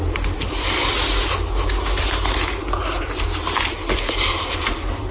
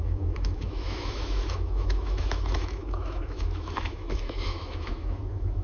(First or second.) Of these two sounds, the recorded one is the first